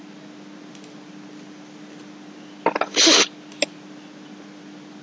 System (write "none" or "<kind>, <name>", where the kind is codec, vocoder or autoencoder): none